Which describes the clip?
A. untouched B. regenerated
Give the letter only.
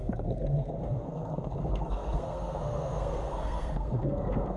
B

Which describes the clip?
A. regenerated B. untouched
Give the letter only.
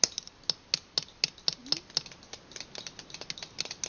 B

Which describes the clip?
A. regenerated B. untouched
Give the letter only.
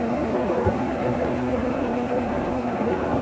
A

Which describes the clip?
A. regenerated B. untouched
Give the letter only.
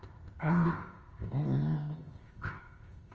A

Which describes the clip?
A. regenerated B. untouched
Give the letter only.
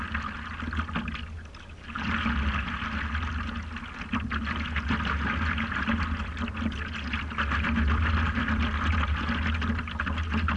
B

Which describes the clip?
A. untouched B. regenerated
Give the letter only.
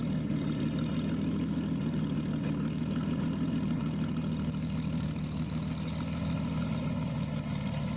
A